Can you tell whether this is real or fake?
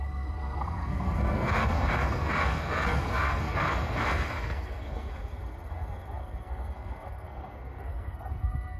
fake